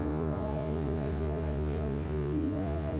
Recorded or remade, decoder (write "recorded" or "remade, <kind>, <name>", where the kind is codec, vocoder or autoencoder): remade, vocoder, Vocos